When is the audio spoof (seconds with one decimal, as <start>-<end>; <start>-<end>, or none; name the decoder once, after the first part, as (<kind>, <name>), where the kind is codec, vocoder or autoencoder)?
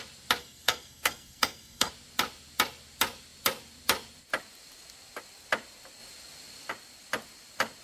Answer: 0.4-1.9 (codec, SNAC)